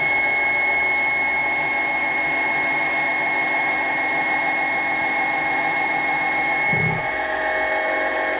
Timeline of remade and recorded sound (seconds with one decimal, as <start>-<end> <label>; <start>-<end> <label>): 0.0-8.4 recorded